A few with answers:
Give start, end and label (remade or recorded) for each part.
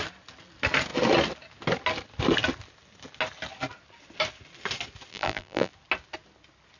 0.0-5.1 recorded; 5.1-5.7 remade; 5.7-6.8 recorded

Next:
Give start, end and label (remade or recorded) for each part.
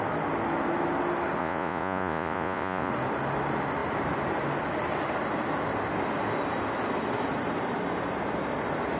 0.0-1.4 recorded; 1.4-2.9 remade; 2.9-9.0 recorded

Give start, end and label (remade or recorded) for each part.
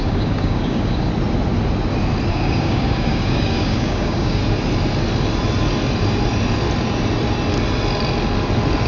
0.0-1.1 remade; 1.1-2.3 recorded; 2.3-4.4 remade; 4.4-8.9 recorded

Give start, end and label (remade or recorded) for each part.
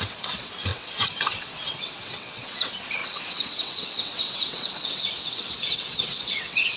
0.0-6.8 remade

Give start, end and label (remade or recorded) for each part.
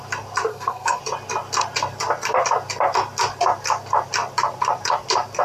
0.0-0.5 recorded; 0.5-1.0 remade; 1.0-5.4 recorded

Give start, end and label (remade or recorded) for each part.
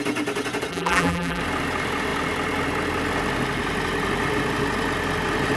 0.0-0.7 recorded; 0.7-1.4 remade; 1.4-5.6 recorded